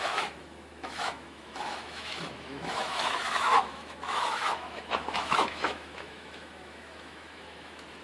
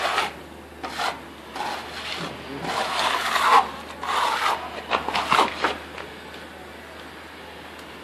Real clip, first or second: second